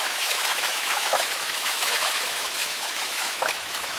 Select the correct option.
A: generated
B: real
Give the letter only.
A